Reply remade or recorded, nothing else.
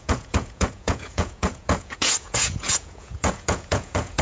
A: remade